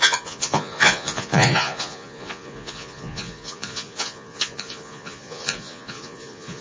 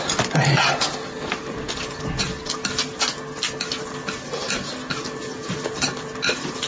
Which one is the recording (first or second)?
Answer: second